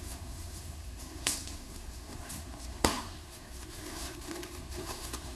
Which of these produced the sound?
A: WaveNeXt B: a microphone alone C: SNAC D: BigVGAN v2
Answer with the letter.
C